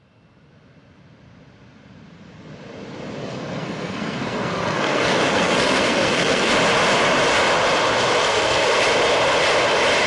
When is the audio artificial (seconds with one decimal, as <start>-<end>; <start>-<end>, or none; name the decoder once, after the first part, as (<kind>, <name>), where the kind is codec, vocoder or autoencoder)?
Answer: 3.2-6.5 (codec, SNAC); 8.2-8.8